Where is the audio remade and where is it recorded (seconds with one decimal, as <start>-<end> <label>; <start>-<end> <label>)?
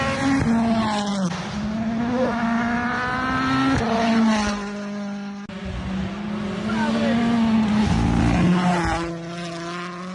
0.0-10.1 recorded